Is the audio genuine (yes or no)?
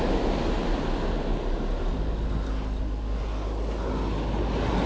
yes